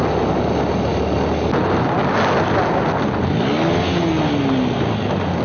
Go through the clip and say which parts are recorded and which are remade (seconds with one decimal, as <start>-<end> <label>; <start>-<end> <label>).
0.0-5.4 recorded

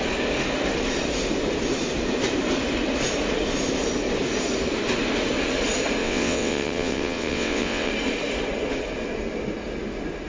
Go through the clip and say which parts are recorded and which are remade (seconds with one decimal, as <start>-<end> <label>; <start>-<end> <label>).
0.0-6.0 recorded; 6.0-7.9 remade; 7.9-10.3 recorded